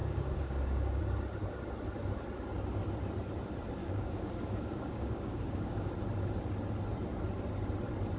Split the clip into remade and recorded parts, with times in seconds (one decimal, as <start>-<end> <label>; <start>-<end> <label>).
0.0-1.0 remade; 1.0-3.8 recorded; 3.8-5.9 remade; 5.9-8.2 recorded